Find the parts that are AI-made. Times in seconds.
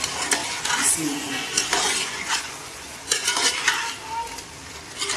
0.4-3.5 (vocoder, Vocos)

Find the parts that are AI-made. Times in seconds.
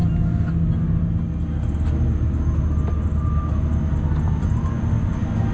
none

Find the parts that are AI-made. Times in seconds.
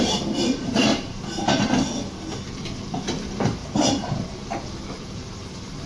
0.0-0.9 (vocoder, BigVGAN v2); 2.7-3.6; 4.9-5.9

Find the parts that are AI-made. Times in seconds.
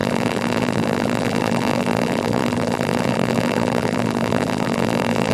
0.0-5.3 (vocoder, BigVGAN v2)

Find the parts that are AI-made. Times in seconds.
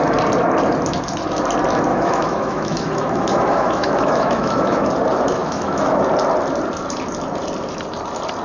1.9-4.9 (autoencoder, DAC-VAE); 5.4-6.0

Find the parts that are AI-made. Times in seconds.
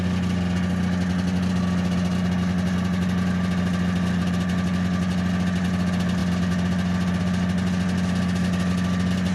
none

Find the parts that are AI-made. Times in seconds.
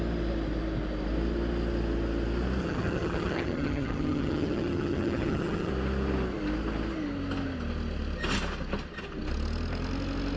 2.6-5.7 (vocoder, HiFi-GAN)